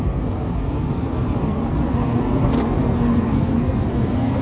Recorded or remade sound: remade